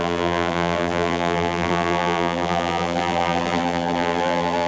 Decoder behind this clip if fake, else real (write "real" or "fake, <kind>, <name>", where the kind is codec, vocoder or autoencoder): fake, vocoder, BigVGAN v2